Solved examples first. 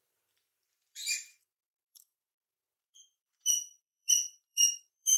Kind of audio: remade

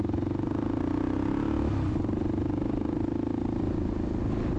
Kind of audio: recorded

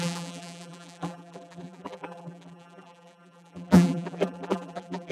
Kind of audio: remade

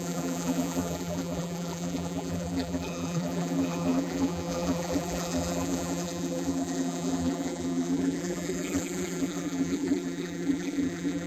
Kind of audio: remade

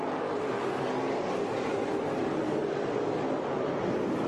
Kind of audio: recorded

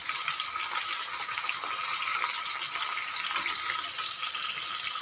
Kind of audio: recorded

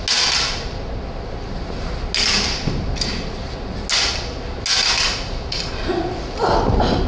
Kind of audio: recorded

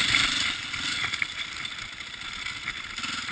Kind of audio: recorded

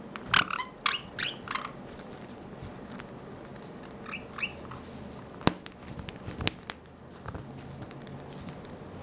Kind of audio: recorded